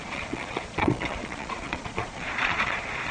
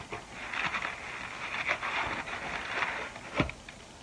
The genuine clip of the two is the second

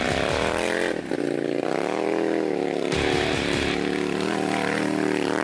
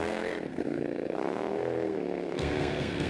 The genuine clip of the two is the first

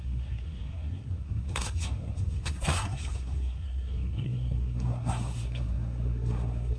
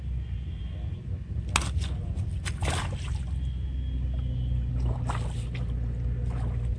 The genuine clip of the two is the second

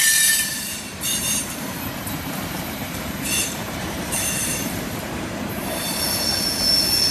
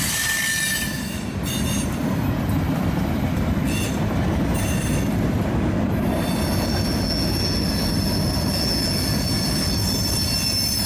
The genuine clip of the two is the second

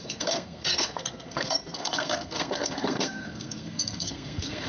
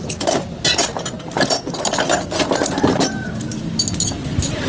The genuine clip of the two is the second